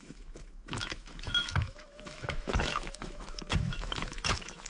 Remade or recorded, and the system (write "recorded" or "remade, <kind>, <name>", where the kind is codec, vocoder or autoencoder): remade, autoencoder, DAC-VAE